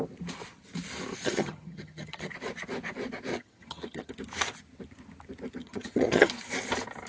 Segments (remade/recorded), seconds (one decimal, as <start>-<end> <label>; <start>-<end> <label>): 0.0-1.2 recorded; 1.2-2.3 remade; 2.3-3.3 recorded; 3.3-4.1 remade; 4.1-5.6 recorded; 5.6-6.3 remade; 6.3-7.1 recorded